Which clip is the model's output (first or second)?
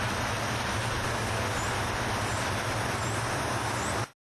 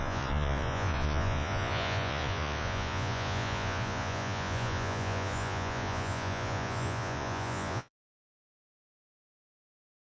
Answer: second